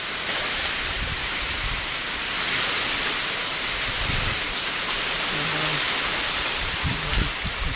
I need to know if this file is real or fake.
real